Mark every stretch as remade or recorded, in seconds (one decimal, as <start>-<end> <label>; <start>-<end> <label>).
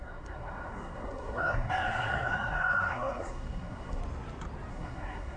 0.0-4.0 remade; 4.0-4.7 recorded; 4.7-5.4 remade